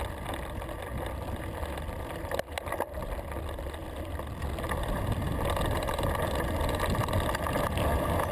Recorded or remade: recorded